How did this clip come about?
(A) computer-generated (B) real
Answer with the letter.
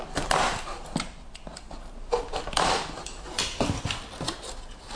B